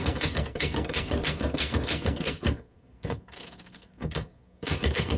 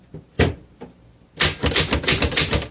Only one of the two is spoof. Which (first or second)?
first